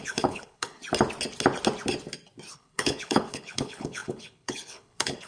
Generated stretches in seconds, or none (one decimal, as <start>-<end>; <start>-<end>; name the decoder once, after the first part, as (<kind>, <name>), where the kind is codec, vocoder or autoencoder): 0.0-0.8 (codec, HILCodec); 2.5-5.3

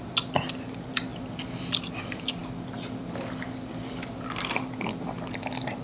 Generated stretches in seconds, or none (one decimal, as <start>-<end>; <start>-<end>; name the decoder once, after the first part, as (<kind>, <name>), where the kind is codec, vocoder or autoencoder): none

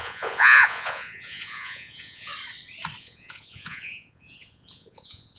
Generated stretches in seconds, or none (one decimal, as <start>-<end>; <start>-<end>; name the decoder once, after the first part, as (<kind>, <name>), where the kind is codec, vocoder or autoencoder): 0.0-2.3 (vocoder, Vocos); 3.0-5.4

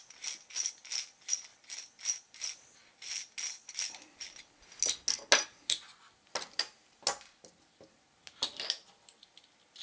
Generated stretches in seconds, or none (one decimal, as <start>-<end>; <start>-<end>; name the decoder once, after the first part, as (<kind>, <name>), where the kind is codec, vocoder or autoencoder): none

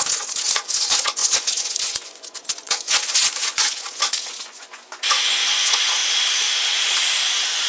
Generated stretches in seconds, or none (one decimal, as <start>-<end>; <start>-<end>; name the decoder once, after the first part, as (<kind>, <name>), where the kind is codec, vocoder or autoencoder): 0.0-6.0 (vocoder, Vocos); 7.3-7.7

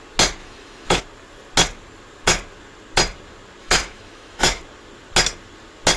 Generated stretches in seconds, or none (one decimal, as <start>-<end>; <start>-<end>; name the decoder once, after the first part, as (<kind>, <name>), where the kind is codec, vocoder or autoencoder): 0.4-1.0 (autoencoder, DAC-VAE); 3.6-4.6